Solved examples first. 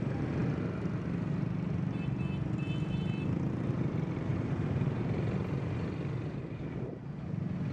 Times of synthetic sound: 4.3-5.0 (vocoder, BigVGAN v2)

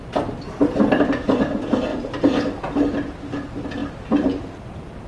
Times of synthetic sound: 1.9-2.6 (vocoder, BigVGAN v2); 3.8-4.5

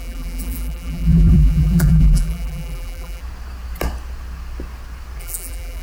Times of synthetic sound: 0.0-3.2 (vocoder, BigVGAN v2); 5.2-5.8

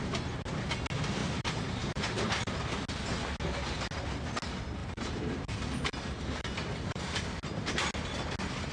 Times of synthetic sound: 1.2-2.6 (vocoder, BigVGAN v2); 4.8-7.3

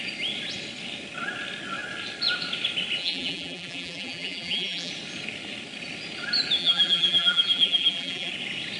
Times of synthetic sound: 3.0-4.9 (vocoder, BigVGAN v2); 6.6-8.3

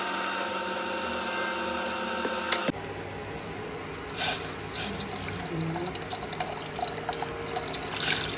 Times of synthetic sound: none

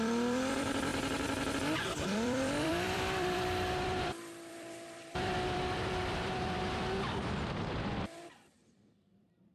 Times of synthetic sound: 0.0-0.9 (vocoder, BigVGAN v2); 1.9-9.5

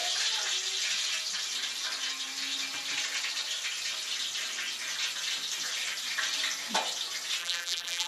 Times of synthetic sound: 7.4-8.1 (vocoder, BigVGAN v2)